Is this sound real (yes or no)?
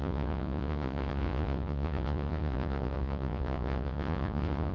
no